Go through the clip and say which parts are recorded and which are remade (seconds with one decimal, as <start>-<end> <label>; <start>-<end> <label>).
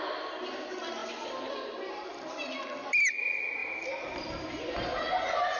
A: 0.0-1.0 recorded; 1.0-1.5 remade; 1.5-2.1 recorded; 2.1-2.9 remade; 2.9-3.6 recorded; 3.6-5.6 remade